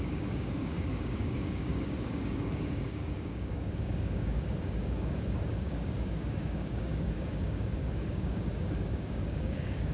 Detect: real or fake fake